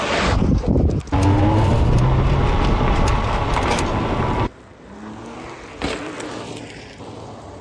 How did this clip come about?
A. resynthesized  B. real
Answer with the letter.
B